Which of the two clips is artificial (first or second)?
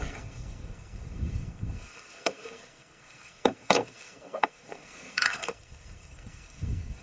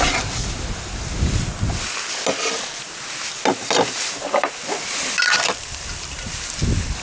first